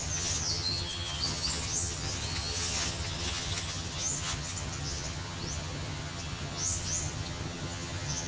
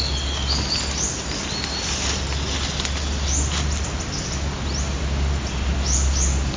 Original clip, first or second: second